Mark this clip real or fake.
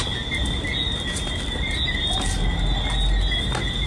real